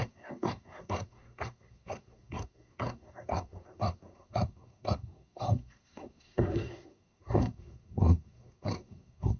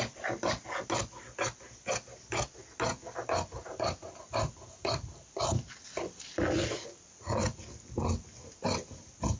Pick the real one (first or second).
second